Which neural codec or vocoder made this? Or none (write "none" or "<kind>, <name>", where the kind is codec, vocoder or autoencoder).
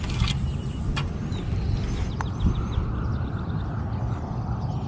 none